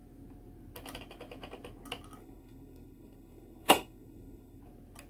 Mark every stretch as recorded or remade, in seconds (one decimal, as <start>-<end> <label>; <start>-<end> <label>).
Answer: 0.0-2.2 recorded; 2.2-4.6 remade; 4.6-5.1 recorded